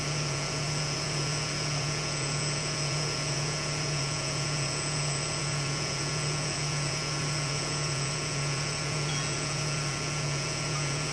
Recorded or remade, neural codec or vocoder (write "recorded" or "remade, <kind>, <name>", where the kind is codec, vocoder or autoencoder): remade, vocoder, Vocos